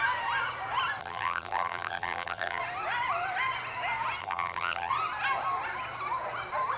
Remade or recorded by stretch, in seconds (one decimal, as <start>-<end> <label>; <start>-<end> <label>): 0.0-1.0 recorded; 1.0-2.6 remade; 2.6-4.2 recorded; 4.2-4.9 remade; 4.9-6.8 recorded